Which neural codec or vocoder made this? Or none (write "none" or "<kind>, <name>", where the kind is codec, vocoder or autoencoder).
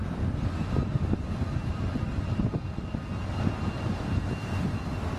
none